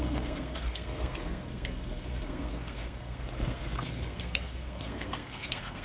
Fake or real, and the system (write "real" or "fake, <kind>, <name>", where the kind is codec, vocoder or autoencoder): fake, codec, SNAC